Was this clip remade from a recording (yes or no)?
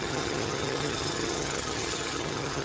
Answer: yes